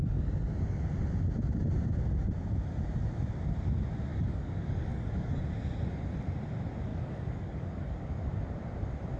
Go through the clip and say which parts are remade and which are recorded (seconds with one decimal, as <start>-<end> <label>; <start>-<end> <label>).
0.0-4.1 recorded; 4.1-5.4 remade; 5.4-6.9 recorded; 6.9-8.3 remade; 8.3-9.2 recorded